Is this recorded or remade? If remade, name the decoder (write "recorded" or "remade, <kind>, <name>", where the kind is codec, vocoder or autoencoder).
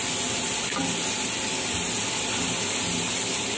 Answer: recorded